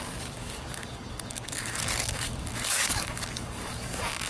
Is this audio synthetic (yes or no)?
yes